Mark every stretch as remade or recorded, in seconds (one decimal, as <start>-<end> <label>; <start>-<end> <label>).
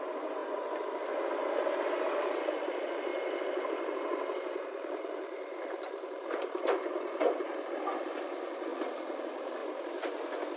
0.0-0.4 remade; 0.4-2.2 recorded; 2.2-9.6 remade; 9.6-10.6 recorded